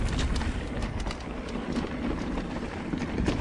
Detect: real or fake fake